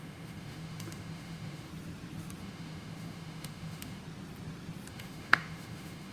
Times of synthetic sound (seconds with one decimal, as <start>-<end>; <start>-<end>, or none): 0.0-1.7; 2.4-4.0; 4.9-6.1

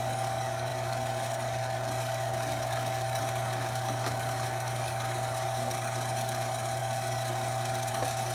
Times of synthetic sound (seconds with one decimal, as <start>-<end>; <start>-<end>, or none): 0.0-8.3

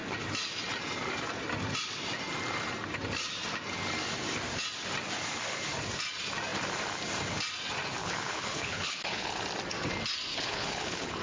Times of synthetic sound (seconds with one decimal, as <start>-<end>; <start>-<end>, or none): 8.0-9.4; 10.3-11.2

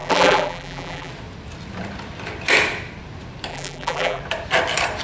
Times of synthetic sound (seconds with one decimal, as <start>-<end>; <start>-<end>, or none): 0.0-1.1; 3.5-4.2

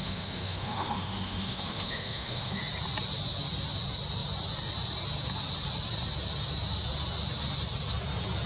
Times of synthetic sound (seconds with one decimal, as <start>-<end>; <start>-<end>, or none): 0.0-2.6

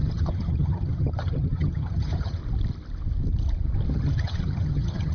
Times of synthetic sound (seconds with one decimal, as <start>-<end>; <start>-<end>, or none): 0.0-2.4; 3.9-5.1

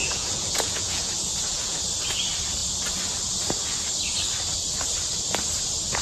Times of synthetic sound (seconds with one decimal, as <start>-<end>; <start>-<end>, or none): 0.0-1.8

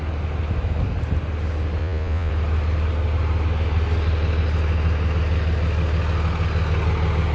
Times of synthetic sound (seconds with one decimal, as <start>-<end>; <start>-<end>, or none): 1.8-2.3